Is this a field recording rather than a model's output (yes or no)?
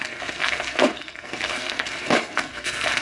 no